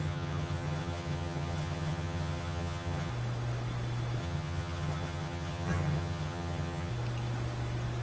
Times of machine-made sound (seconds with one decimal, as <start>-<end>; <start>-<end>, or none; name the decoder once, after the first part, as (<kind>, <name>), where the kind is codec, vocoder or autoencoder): 0.0-3.1 (vocoder, HiFi-GAN); 4.2-6.9